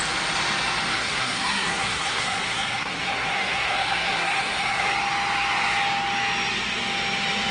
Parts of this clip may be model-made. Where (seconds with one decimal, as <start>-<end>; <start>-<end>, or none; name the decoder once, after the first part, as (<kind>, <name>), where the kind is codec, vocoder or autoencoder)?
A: 0.9-4.9 (codec, SNAC)